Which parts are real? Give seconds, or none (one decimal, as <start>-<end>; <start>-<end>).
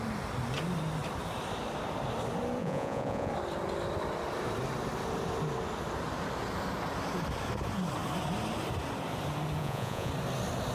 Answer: 0.0-2.6; 3.3-9.6; 10.1-10.7